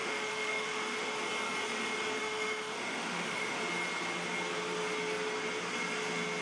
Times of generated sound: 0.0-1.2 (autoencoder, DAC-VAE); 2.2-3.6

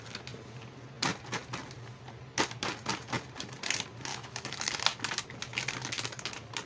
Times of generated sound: 4.1-4.7 (autoencoder, DAC-VAE)

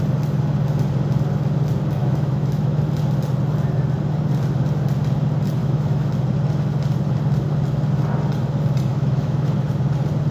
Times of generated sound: 2.0-2.9 (autoencoder, DAC-VAE); 5.6-6.1; 8.9-9.5

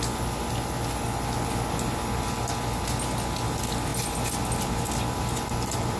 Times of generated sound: none

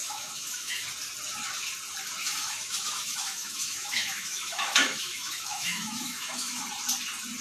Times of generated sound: 0.0-0.8 (autoencoder, DAC-VAE); 2.2-6.6

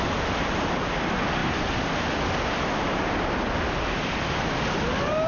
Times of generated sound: none

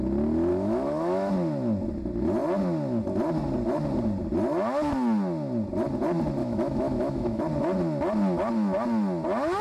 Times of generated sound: 0.5-1.3 (autoencoder, DAC-VAE); 6.4-7.4